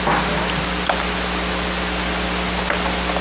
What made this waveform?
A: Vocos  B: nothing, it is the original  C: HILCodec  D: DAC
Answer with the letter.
B